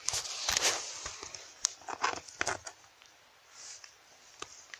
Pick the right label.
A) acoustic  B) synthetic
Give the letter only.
A